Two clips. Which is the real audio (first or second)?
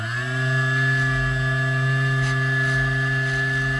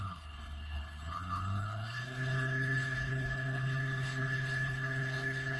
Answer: first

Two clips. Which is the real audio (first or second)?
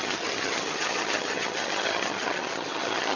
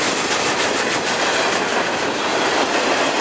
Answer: second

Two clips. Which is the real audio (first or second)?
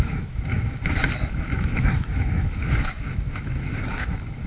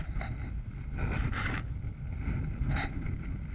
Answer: second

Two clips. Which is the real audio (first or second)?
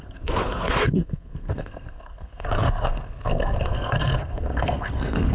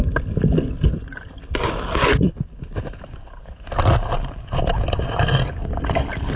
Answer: second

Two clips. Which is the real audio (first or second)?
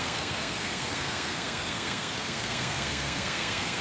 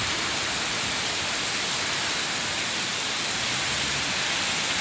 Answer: second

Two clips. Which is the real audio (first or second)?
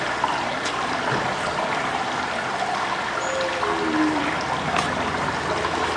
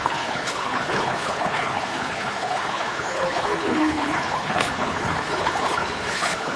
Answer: first